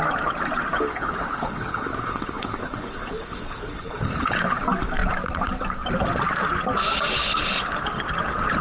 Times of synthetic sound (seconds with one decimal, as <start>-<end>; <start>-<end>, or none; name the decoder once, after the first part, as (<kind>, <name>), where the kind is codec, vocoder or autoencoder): 0.7-4.6 (codec, HILCodec)